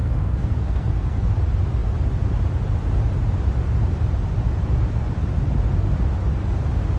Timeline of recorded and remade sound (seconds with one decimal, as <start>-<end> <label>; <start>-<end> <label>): 0.0-1.3 remade; 1.3-7.0 recorded